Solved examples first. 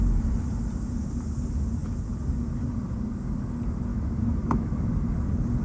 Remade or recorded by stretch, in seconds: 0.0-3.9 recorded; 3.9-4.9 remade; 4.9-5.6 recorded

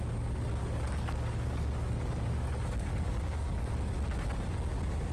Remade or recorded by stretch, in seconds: 0.0-0.6 recorded; 0.6-3.7 remade; 3.7-5.1 recorded